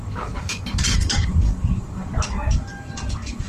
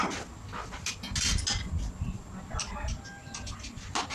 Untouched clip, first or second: second